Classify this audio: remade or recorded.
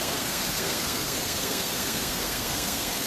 remade